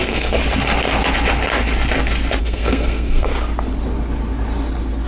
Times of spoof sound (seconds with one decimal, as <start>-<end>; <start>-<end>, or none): 0.0-0.4; 2.4-3.3